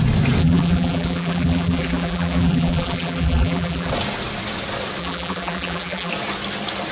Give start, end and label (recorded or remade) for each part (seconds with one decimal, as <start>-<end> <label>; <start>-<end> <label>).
0.0-0.4 recorded; 0.4-3.9 remade; 3.9-5.0 recorded; 5.0-6.1 remade; 6.1-6.9 recorded